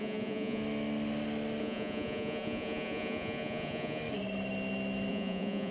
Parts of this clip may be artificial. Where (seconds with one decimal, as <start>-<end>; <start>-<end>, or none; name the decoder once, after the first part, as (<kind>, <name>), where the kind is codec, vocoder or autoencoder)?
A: 0.0-0.6 (vocoder, Vocos); 1.6-4.0; 5.1-5.7